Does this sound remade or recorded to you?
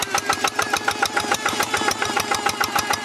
remade